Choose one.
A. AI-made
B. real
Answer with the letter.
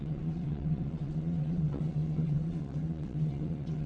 A